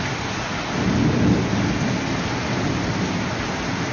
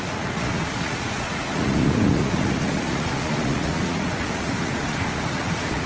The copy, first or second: second